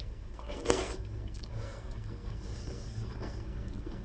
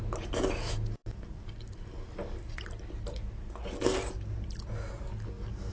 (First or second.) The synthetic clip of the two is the first